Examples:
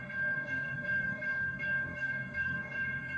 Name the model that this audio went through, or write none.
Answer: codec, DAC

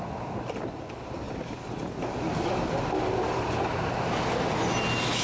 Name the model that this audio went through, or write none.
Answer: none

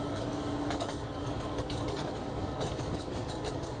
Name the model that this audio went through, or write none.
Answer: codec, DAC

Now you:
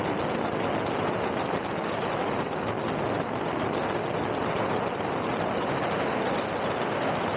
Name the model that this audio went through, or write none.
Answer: none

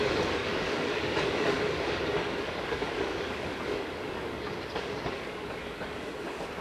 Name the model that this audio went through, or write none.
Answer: codec, DAC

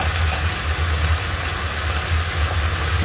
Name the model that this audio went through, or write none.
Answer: none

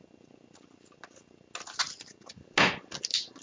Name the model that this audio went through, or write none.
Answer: none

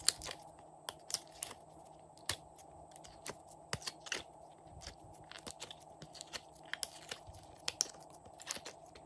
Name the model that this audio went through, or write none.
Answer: none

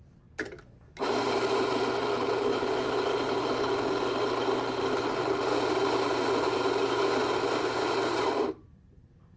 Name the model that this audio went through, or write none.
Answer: none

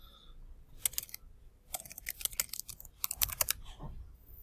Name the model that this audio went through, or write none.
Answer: none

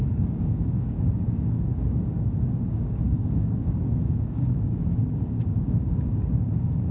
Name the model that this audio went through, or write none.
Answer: codec, DAC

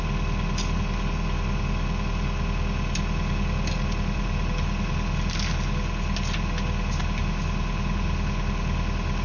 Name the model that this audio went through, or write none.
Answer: none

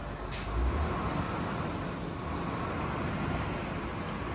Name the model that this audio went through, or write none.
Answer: none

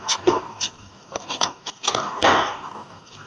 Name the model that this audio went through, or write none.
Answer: codec, DAC